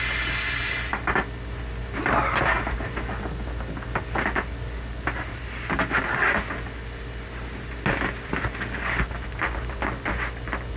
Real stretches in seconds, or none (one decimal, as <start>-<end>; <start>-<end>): 0.0-10.8